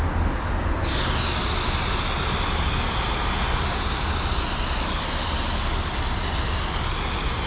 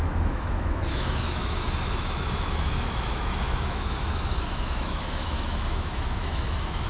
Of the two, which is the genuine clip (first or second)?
first